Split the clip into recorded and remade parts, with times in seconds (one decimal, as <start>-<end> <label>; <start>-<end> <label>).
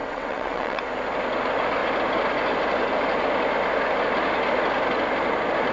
0.0-0.8 remade; 0.8-5.7 recorded